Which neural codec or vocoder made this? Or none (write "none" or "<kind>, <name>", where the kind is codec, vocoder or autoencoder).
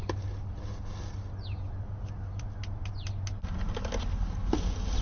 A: none